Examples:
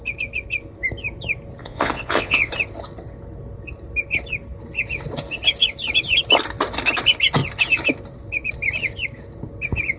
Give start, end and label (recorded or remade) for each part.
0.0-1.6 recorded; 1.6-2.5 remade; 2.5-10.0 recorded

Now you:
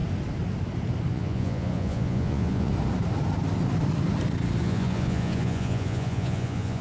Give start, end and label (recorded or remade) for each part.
0.0-1.1 recorded; 1.1-2.7 remade; 2.7-4.6 recorded; 4.6-6.8 remade

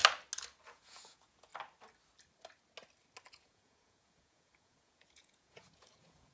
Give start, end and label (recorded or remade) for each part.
0.0-0.7 recorded; 0.7-1.5 remade; 1.5-3.3 recorded; 3.3-6.3 remade

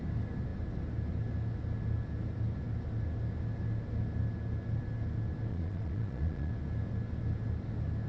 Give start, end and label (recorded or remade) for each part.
0.0-5.5 recorded; 5.5-6.5 remade; 6.5-8.1 recorded

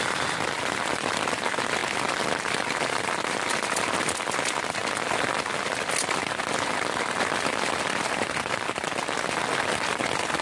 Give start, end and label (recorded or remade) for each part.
0.0-10.4 recorded

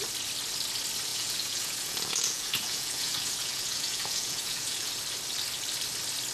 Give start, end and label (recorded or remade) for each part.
0.0-1.1 recorded; 1.1-4.9 remade; 4.9-6.3 recorded

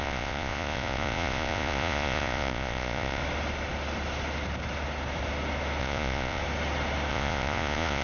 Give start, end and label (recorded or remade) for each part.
0.0-3.2 remade; 3.2-5.8 recorded; 5.8-6.4 remade; 6.4-7.1 recorded; 7.1-8.0 remade